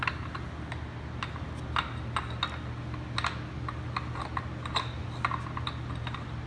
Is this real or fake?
real